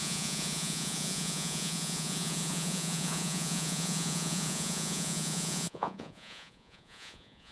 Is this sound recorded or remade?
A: remade